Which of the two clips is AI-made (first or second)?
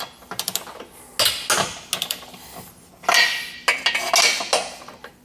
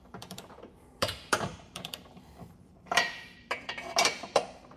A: second